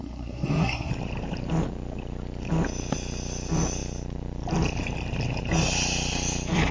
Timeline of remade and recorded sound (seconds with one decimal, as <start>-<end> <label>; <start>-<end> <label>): 0.0-0.9 remade; 0.9-6.7 recorded